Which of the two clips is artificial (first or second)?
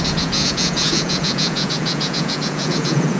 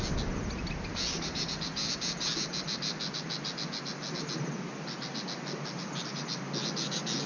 first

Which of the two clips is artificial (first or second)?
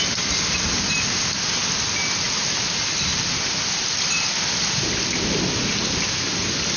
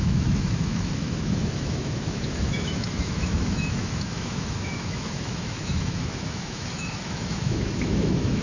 second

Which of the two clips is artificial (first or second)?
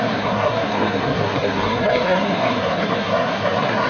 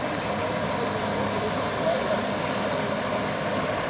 first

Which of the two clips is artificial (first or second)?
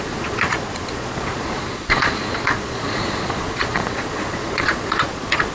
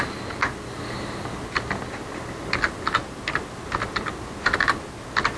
first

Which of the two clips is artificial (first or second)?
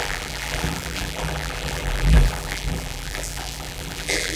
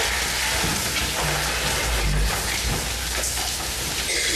first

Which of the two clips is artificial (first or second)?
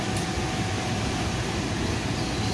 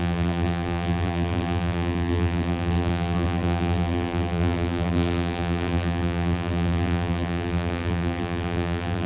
second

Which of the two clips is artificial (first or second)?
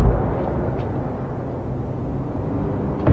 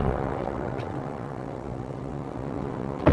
second